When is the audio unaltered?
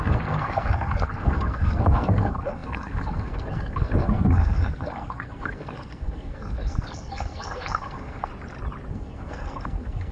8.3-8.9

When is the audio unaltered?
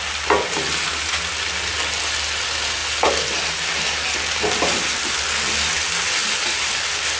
0.0-7.2